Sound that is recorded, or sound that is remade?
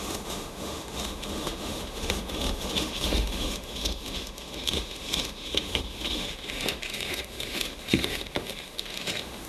remade